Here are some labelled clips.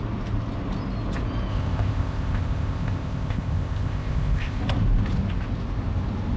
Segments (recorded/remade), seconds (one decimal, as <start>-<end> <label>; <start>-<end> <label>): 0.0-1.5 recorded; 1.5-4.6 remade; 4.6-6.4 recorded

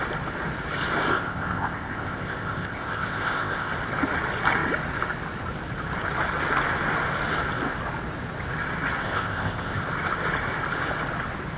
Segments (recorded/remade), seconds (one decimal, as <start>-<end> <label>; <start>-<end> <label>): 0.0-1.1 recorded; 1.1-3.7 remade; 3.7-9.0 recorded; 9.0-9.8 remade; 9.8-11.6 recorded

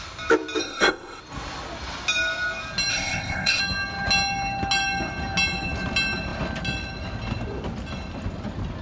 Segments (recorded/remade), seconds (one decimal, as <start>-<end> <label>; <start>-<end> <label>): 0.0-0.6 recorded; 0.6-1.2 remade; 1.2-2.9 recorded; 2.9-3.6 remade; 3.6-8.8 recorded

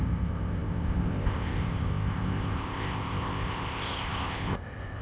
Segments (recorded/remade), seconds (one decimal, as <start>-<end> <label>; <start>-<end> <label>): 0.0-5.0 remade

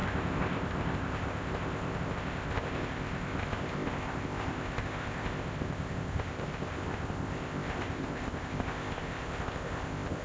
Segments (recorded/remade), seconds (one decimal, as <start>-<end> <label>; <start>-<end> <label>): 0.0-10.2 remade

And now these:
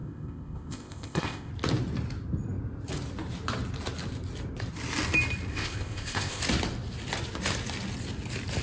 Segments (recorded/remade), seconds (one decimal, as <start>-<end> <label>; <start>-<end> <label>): 0.0-1.5 remade; 1.5-5.5 recorded; 5.5-6.4 remade; 6.4-8.6 recorded

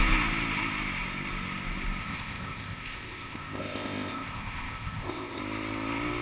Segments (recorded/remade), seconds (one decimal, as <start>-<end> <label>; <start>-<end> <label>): 0.0-2.0 recorded; 2.0-5.4 remade; 5.4-6.2 recorded